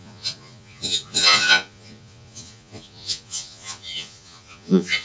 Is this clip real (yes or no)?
no